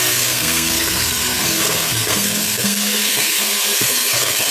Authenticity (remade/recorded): remade